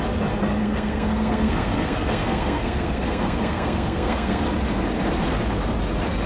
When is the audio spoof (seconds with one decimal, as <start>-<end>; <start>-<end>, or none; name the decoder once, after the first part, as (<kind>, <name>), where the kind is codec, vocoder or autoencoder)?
0.6-4.4 (codec, SNAC)